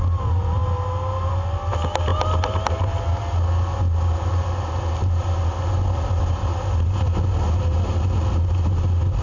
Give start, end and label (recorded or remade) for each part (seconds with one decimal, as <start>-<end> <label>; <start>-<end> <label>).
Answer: 0.0-9.2 recorded